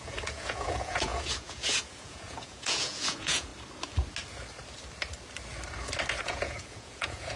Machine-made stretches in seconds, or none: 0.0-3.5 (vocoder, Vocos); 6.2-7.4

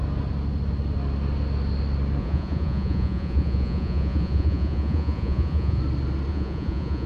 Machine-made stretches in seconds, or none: 2.2-5.8 (vocoder, Vocos); 6.3-7.1

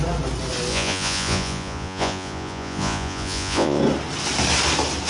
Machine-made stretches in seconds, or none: 0.7-3.8 (vocoder, Vocos)